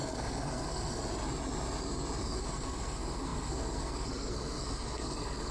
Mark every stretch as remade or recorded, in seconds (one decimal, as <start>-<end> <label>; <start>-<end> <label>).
0.0-1.0 remade; 1.0-2.2 recorded; 2.2-5.5 remade